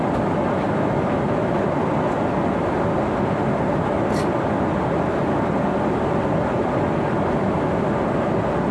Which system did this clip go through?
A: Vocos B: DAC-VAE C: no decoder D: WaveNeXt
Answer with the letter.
C